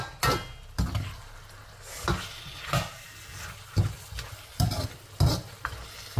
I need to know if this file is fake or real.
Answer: real